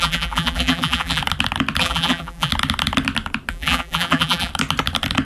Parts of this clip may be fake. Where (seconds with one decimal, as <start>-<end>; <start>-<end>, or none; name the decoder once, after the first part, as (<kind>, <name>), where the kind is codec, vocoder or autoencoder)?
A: 0.0-1.2 (vocoder, BigVGAN v2); 1.8-2.5; 3.5-4.5